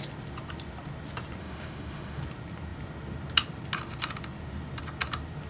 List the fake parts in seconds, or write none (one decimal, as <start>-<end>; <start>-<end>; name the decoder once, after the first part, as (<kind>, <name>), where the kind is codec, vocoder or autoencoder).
1.4-2.2 (autoencoder, DAC-VAE)